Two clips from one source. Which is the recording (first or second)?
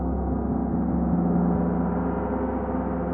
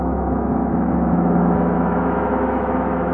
first